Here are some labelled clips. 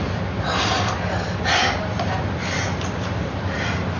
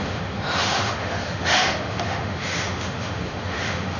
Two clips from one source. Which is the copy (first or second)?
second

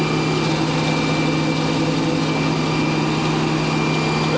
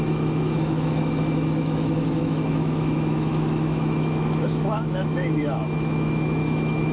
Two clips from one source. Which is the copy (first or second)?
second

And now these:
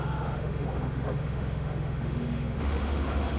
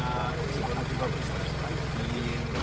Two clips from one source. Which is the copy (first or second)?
first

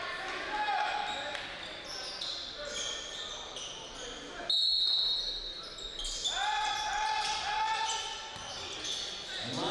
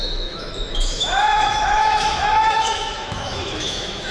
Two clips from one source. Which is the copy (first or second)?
second